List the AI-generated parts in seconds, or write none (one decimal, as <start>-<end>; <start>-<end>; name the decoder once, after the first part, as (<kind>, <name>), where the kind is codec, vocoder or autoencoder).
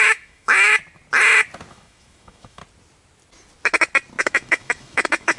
0.0-0.7 (autoencoder, DAC-VAE); 1.7-2.6; 4.2-5.4